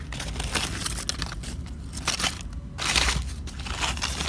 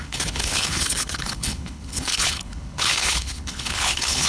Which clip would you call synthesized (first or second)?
second